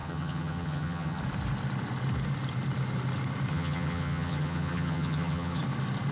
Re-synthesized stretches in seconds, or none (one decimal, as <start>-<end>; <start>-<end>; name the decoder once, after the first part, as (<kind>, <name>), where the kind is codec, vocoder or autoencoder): 0.0-1.2 (vocoder, HiFi-GAN); 3.5-5.6